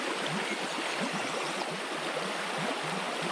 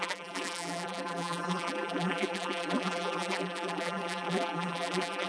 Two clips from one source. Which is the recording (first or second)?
first